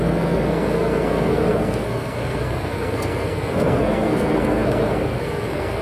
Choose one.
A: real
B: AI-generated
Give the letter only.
B